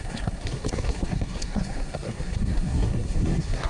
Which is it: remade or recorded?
remade